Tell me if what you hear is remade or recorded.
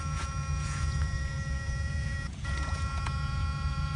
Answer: remade